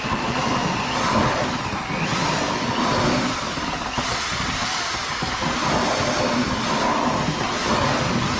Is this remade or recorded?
recorded